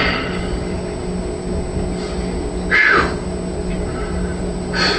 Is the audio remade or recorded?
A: recorded